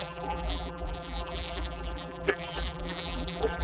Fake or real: fake